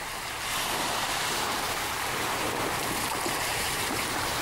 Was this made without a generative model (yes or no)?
no